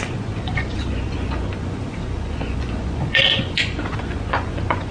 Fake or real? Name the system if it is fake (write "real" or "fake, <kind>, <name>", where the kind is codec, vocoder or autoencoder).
fake, vocoder, Vocos